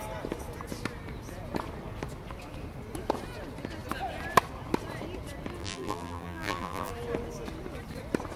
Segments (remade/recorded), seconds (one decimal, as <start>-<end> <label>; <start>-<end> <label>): 0.0-5.6 recorded; 5.6-6.9 remade; 6.9-8.4 recorded